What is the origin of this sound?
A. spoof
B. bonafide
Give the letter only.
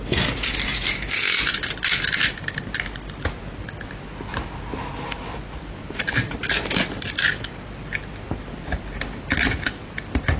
B